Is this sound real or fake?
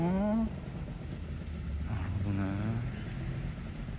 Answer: real